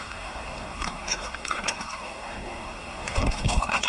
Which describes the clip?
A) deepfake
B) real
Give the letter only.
A